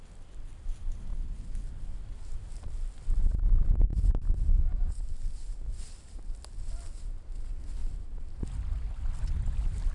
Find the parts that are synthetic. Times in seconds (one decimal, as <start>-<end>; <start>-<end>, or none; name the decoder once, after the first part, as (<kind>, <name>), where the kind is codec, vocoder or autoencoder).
none